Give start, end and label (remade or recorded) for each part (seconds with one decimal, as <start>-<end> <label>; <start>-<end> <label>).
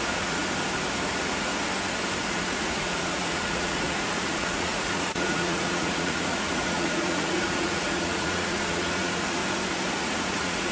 0.0-0.4 remade; 0.4-1.1 recorded; 1.1-1.5 remade; 1.5-2.3 recorded; 2.3-9.4 remade; 9.4-9.9 recorded; 9.9-10.7 remade